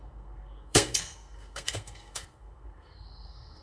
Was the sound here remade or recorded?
remade